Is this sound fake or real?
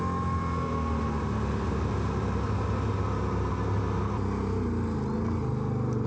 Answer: real